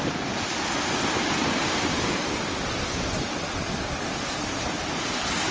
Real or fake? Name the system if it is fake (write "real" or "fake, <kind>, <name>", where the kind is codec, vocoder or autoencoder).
real